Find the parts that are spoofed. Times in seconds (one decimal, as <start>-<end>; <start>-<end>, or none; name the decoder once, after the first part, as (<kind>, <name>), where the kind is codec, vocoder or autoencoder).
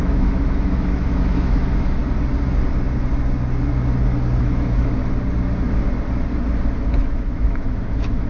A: 0.0-2.0 (autoencoder, DAC-VAE); 4.4-5.0; 6.9-8.3